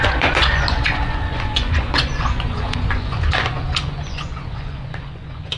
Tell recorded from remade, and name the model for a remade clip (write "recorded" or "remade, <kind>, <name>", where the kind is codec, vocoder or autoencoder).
remade, vocoder, Vocos